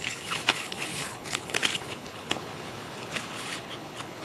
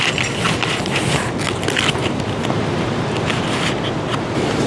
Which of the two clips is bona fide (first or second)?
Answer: second